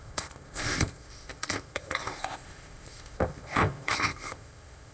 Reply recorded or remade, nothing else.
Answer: remade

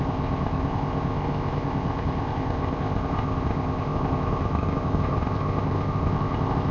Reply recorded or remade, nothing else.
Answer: remade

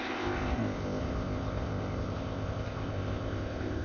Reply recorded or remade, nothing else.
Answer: remade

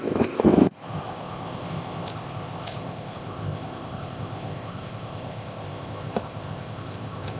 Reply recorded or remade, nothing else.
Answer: remade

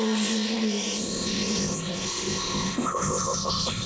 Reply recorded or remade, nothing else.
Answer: remade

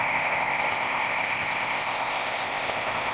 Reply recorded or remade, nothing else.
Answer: remade